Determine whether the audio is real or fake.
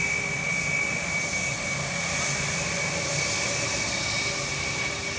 real